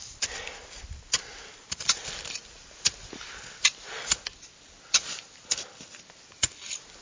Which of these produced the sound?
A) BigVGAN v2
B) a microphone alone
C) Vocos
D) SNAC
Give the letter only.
B